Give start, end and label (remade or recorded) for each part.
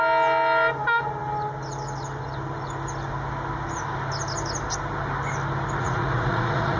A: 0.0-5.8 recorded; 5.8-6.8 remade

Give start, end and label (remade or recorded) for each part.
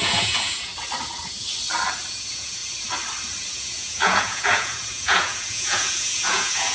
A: 0.0-0.7 remade; 0.7-2.1 recorded; 2.1-2.6 remade; 2.6-3.5 recorded; 3.5-6.7 remade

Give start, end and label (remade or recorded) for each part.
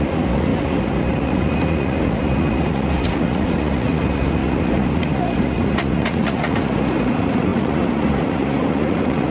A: 0.0-9.3 remade